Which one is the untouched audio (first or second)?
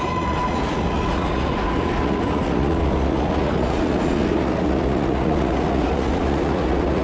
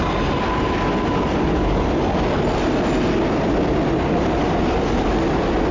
second